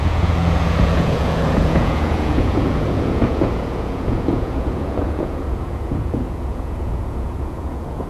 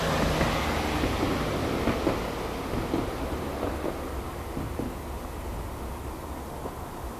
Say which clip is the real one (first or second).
second